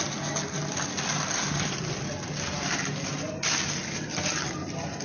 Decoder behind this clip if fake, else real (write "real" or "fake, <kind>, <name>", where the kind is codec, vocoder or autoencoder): real